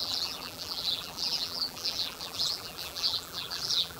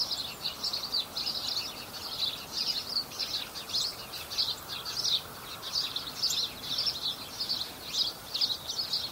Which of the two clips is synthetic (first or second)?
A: first